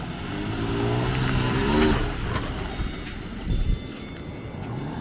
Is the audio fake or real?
real